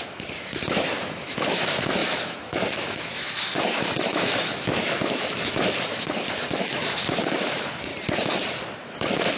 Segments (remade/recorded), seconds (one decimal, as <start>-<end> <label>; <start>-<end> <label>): 0.0-7.9 remade; 7.9-8.8 recorded; 8.8-9.4 remade